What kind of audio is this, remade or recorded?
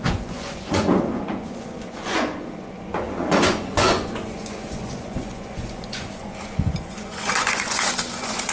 remade